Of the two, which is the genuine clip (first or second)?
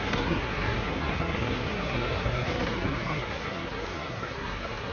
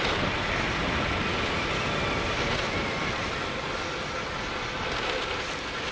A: second